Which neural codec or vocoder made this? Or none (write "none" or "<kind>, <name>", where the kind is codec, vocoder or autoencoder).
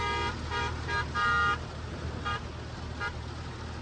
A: none